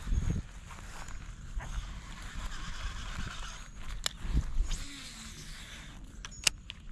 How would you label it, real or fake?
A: real